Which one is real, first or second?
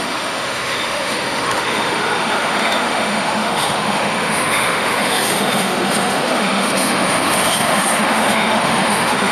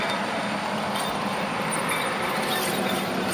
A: second